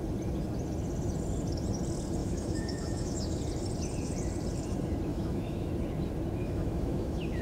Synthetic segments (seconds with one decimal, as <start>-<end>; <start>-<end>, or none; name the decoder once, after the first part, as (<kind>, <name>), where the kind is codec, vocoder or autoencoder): 2.2-3.4 (autoencoder, DAC-VAE); 5.1-5.7; 6.4-7.4